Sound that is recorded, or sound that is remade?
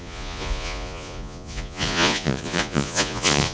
remade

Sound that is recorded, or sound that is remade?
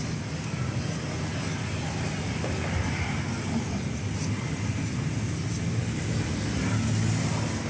recorded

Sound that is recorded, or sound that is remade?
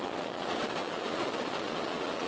remade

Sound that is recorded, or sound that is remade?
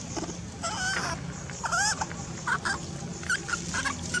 recorded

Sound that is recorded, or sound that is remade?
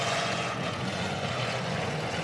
remade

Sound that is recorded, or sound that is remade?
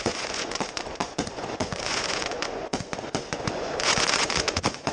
remade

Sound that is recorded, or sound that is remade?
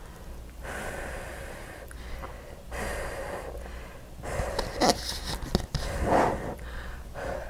recorded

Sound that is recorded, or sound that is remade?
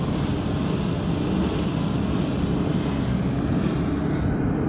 recorded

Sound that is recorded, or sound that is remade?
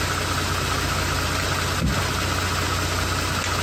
recorded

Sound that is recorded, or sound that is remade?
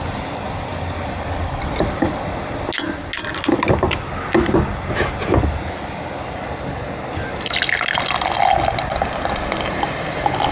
recorded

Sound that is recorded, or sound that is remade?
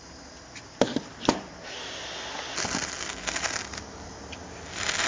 recorded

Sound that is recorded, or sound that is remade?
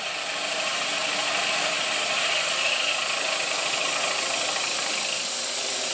recorded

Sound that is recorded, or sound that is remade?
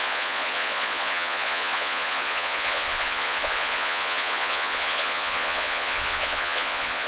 remade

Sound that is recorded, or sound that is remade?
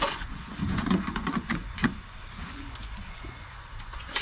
remade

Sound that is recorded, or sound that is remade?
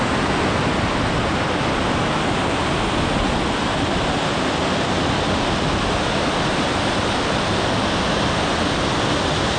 recorded